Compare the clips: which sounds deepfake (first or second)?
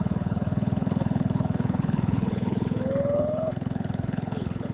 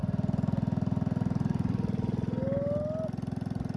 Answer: first